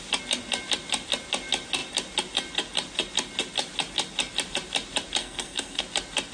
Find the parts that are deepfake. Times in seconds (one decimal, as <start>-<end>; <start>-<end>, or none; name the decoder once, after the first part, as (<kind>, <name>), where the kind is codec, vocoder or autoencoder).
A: 5.2-5.8 (codec, SNAC)